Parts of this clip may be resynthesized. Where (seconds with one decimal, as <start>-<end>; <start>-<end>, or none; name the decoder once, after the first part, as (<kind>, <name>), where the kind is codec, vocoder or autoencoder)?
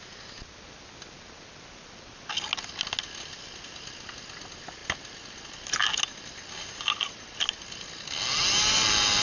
none